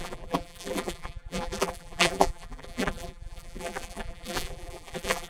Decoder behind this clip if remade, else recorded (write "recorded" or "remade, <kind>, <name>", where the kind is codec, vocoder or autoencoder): remade, vocoder, BigVGAN v2